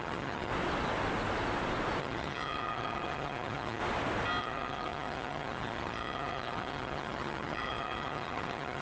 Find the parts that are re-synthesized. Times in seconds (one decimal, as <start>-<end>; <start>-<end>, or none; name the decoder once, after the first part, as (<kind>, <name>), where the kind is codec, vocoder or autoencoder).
0.0-0.5 (vocoder, HiFi-GAN); 2.0-3.8; 4.4-8.8